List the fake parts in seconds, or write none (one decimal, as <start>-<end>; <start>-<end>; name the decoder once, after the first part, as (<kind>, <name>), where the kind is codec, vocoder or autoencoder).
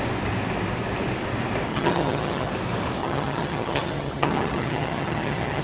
1.7-2.5 (vocoder, HiFi-GAN); 3.0-5.6